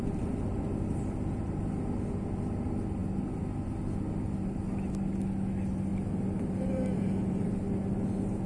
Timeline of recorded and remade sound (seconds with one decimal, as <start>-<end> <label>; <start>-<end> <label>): 0.0-5.9 recorded; 5.9-7.6 remade; 7.6-8.5 recorded